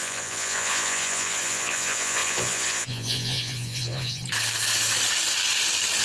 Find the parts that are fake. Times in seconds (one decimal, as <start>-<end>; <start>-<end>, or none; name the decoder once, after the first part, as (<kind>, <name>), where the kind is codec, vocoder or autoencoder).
0.0-4.2 (vocoder, Vocos)